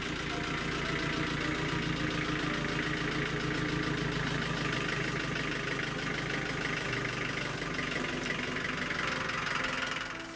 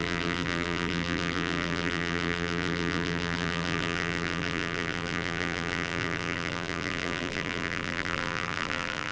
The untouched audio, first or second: first